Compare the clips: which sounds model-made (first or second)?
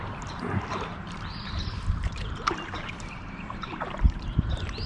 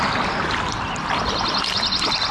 first